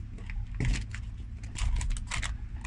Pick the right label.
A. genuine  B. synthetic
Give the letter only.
A